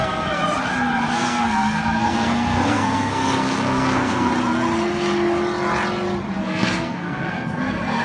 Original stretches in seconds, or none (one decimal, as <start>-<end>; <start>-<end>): 0.4-1.1; 4.3-6.4